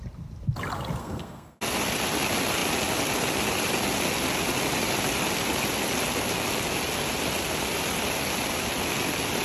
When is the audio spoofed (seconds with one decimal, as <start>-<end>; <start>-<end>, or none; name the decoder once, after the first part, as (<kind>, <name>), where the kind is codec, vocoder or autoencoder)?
1.0-1.6 (codec, SNAC)